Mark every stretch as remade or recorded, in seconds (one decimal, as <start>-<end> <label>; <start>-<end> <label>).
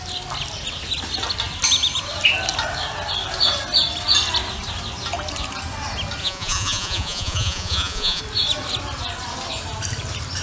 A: 0.0-6.2 recorded; 6.2-8.2 remade; 8.2-10.4 recorded